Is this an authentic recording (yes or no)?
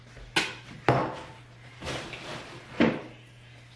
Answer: yes